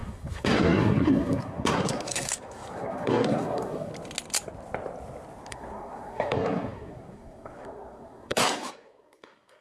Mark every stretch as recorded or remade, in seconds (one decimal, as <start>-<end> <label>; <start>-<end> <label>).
0.0-3.9 remade; 3.9-5.5 recorded; 5.5-9.6 remade